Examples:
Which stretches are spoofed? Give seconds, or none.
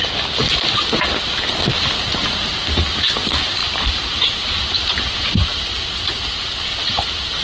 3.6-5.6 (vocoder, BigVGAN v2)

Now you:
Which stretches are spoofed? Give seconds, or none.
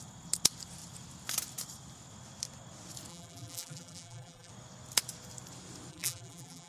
3.1-4.5 (vocoder, BigVGAN v2); 5.9-6.7